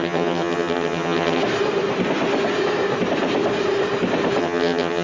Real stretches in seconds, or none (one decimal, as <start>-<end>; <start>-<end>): 1.4-4.4